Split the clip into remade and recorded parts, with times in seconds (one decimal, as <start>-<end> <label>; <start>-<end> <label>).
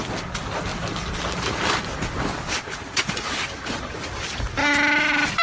0.0-0.7 recorded; 0.7-3.9 remade; 3.9-5.4 recorded